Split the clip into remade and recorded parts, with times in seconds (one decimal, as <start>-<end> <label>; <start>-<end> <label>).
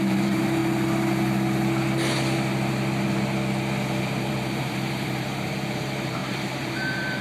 0.0-0.6 remade; 0.6-4.0 recorded; 4.0-7.2 remade